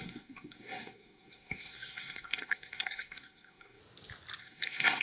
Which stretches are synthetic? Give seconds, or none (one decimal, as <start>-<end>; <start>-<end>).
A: 0.0-3.8; 4.4-5.0